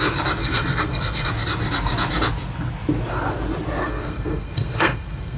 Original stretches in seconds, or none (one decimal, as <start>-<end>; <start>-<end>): 0.0-0.4; 1.3-3.8